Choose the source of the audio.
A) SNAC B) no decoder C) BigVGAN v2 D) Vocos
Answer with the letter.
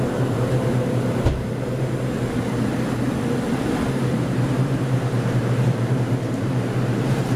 C